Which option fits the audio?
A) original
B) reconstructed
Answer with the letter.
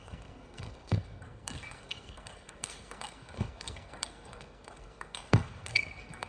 B